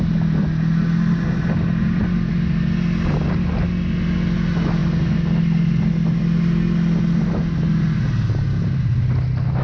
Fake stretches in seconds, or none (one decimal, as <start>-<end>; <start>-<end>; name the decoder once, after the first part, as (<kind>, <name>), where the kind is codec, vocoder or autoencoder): none